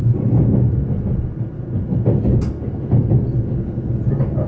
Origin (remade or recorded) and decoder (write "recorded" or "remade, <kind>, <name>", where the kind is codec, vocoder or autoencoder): recorded